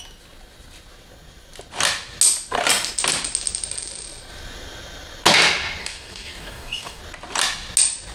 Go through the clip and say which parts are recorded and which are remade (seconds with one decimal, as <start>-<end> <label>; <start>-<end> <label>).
0.0-5.8 recorded; 5.8-7.0 remade; 7.0-8.1 recorded